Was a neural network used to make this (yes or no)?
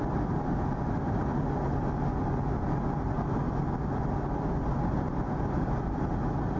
no